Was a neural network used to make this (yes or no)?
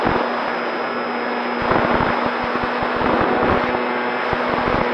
no